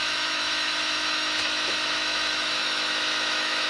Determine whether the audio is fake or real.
fake